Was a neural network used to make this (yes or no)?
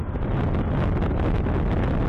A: no